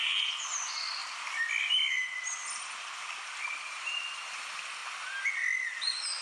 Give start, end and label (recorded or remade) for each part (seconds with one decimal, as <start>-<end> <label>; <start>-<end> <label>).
0.0-1.0 recorded; 1.0-4.0 remade; 4.0-6.2 recorded